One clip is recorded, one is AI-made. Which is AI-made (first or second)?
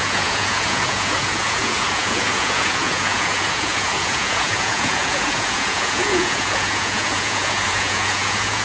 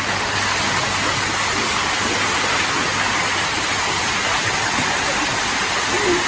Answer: first